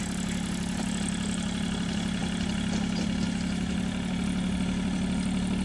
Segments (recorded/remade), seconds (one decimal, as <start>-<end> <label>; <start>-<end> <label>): 0.0-5.6 recorded